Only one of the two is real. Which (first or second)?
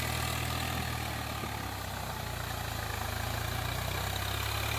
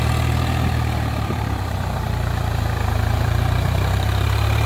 first